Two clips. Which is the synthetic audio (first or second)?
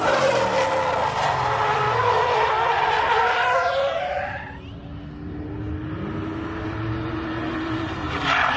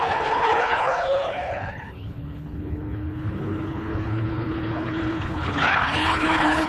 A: second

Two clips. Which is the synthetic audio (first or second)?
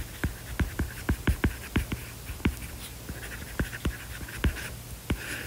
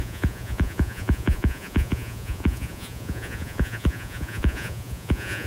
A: second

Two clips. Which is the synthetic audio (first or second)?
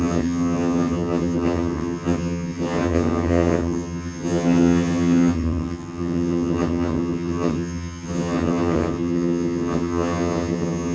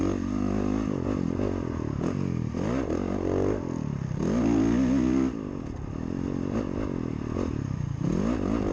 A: first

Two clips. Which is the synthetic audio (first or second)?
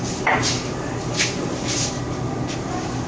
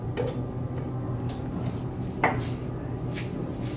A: first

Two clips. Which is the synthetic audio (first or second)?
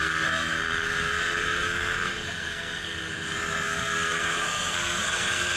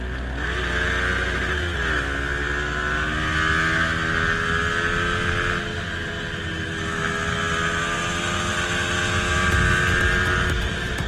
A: first